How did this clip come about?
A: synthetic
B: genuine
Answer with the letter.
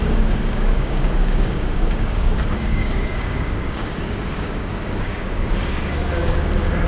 A